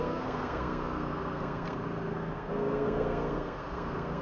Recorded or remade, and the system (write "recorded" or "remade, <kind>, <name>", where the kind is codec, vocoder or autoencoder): remade, codec, SNAC